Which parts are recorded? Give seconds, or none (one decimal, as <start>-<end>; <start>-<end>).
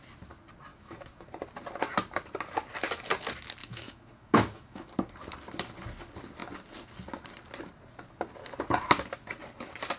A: 0.0-0.7; 1.3-3.6; 4.9-10.0